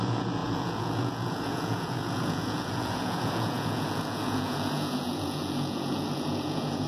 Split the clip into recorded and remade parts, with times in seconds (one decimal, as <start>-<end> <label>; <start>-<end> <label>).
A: 0.0-6.9 remade